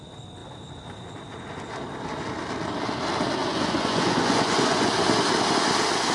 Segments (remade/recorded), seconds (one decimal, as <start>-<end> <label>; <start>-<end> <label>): 0.0-3.4 recorded; 3.4-4.9 remade; 4.9-6.1 recorded